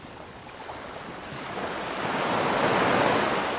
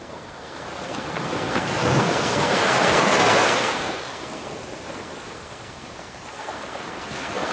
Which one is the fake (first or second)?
second